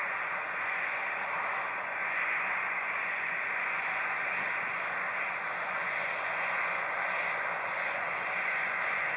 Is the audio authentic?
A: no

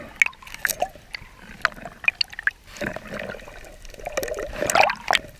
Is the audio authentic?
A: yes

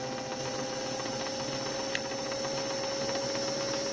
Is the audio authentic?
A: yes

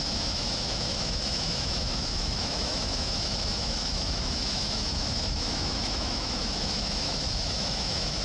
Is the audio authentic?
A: no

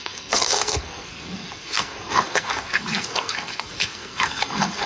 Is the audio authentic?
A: no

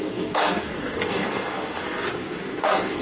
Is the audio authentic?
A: no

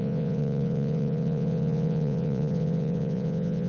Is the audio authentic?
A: no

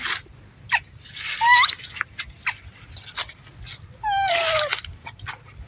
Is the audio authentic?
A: yes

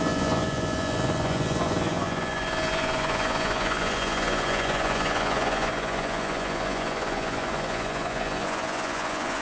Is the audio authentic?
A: no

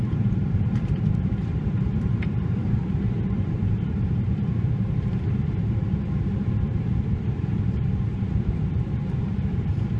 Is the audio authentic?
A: no